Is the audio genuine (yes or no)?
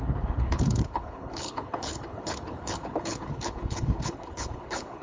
no